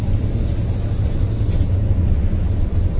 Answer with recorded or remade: recorded